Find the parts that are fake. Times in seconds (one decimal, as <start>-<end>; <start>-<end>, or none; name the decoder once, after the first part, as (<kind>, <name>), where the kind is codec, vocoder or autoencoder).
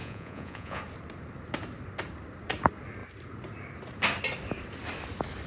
0.0-0.8 (vocoder, Vocos)